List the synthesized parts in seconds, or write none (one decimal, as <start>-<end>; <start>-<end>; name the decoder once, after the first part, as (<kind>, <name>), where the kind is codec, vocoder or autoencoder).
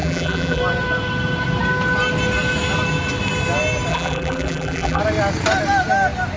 0.0-0.6 (vocoder, BigVGAN v2); 3.9-5.0